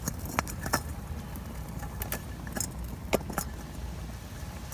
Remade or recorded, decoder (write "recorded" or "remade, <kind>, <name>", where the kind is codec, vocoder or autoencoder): recorded